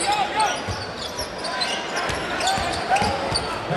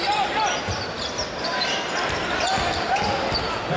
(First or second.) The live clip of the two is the first